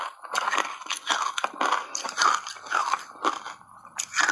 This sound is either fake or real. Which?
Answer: real